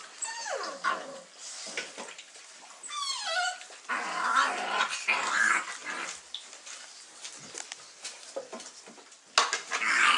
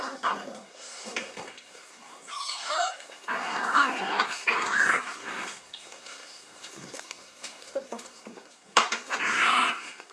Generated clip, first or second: second